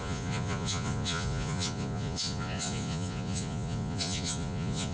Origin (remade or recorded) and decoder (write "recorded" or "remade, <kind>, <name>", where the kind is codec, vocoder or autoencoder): remade, vocoder, Vocos